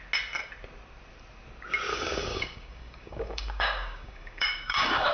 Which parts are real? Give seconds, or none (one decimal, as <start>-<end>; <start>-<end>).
0.0-1.9